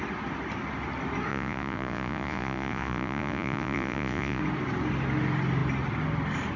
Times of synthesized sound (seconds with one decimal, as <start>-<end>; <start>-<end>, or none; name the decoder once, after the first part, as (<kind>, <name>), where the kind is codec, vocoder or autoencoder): 1.3-4.4 (vocoder, Vocos)